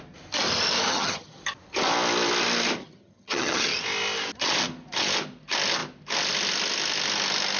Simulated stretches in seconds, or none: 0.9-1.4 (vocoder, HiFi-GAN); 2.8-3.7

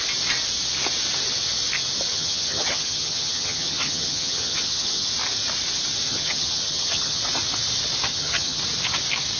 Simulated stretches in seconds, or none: 2.1-5.1 (vocoder, HiFi-GAN); 6.1-7.2; 8.1-8.6

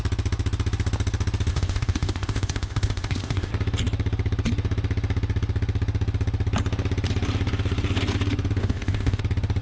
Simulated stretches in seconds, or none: 1.5-3.5 (codec, ZipCodec); 8.6-9.2

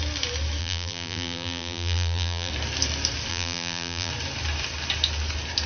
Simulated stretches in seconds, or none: 0.6-2.5 (vocoder, BigVGAN v2); 3.3-4.1

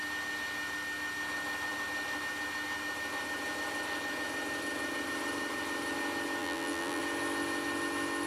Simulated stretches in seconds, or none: 6.4-7.0 (vocoder, BigVGAN v2)